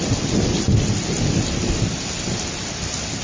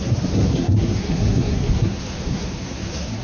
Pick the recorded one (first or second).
first